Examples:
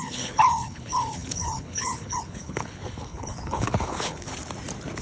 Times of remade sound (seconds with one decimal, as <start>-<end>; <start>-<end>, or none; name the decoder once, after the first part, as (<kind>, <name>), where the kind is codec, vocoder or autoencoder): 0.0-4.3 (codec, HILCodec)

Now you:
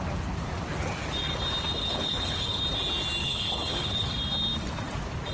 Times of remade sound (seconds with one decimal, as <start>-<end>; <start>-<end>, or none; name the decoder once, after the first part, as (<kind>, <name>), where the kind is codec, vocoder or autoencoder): 1.8-2.6 (codec, HILCodec); 3.2-4.1

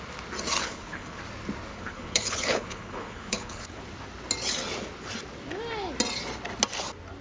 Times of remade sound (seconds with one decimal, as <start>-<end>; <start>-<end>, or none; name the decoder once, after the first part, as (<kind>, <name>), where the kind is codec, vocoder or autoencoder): 0.6-1.2 (codec, HILCodec); 1.7-3.8